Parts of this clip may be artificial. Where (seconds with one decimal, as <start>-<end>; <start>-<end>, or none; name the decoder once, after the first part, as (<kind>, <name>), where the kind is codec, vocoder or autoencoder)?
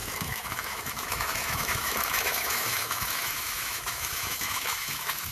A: 0.0-5.3 (autoencoder, DAC-VAE)